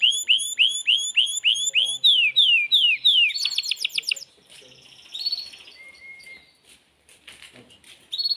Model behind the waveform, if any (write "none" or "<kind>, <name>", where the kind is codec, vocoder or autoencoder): none